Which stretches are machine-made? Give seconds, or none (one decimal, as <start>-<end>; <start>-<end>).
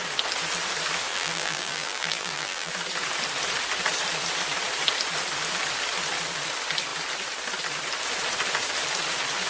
1.1-2.7